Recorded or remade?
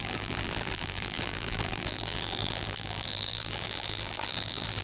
remade